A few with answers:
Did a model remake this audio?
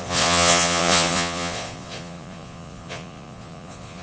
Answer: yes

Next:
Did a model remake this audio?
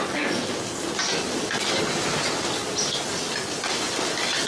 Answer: no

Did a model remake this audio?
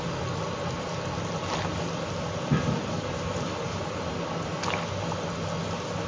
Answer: no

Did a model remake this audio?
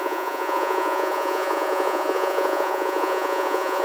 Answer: yes